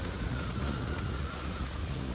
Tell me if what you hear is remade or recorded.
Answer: remade